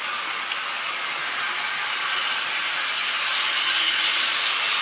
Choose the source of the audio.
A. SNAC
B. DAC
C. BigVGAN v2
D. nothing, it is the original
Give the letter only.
D